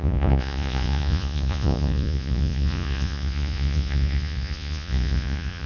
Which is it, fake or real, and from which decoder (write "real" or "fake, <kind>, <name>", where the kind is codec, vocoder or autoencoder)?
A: fake, vocoder, Vocos